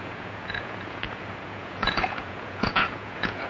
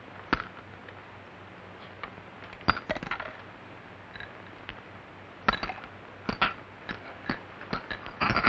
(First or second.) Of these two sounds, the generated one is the first